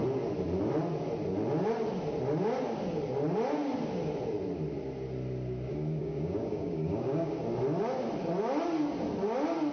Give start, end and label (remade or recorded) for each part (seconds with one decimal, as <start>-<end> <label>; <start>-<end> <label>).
0.0-6.0 recorded; 6.0-7.4 remade; 7.4-9.7 recorded